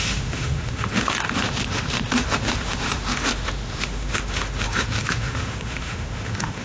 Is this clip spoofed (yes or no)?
yes